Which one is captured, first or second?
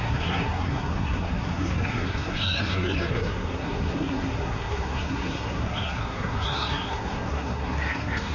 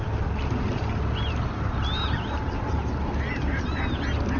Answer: second